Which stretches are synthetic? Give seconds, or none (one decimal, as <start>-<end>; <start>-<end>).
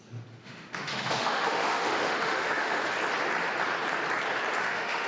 0.4-2.8; 4.6-5.1